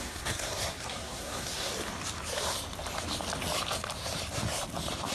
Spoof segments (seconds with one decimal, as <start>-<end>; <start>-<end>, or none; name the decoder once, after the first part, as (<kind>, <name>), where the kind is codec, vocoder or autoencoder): 0.0-1.7 (codec, SNAC)